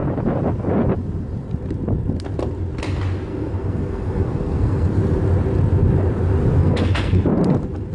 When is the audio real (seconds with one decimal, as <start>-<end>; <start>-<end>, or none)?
0.0-3.3; 4.9-6.6; 7.2-7.9